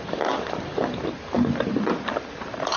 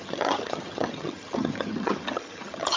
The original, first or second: first